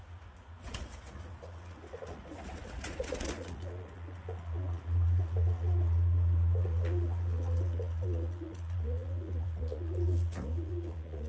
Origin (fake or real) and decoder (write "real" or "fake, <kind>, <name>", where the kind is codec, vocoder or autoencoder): fake, vocoder, Vocos